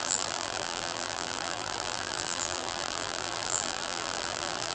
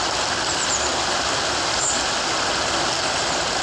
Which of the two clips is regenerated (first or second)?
first